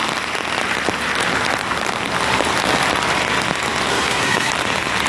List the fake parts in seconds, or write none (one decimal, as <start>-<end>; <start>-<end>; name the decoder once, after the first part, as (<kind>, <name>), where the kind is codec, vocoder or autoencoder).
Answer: 3.9-4.5 (codec, SNAC)